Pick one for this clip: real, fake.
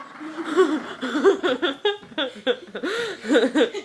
real